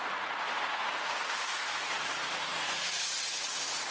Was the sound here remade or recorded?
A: remade